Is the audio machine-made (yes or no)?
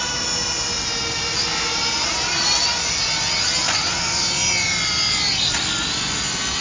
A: no